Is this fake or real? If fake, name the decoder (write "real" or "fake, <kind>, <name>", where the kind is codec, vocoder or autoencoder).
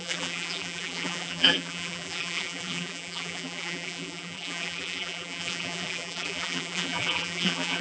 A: fake, vocoder, BigVGAN v2